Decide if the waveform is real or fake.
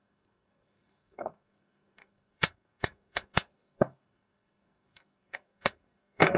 fake